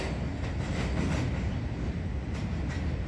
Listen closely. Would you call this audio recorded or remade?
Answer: recorded